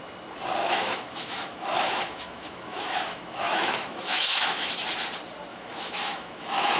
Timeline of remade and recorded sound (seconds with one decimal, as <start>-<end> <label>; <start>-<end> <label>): 0.0-0.6 recorded; 0.6-4.7 remade; 4.7-5.5 recorded; 5.5-6.8 remade